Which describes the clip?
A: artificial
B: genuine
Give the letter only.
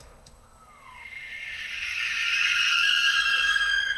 A